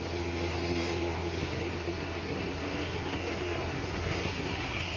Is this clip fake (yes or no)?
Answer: yes